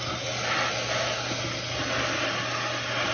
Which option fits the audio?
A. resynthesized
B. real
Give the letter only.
B